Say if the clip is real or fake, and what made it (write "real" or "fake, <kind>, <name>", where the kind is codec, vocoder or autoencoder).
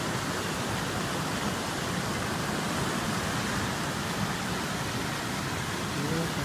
real